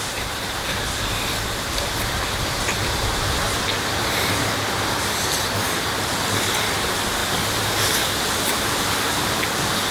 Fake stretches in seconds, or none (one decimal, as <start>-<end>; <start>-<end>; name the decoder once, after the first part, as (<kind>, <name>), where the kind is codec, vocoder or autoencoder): none